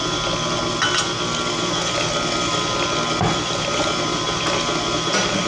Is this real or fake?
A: real